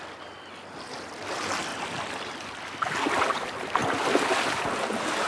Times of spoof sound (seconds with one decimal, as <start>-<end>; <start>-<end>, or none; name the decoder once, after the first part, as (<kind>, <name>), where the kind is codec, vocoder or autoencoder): none

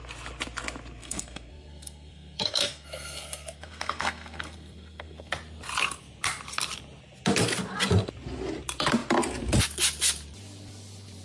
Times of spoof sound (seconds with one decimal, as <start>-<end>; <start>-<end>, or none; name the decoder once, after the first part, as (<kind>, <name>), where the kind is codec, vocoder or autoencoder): 1.0-5.3 (codec, SNAC)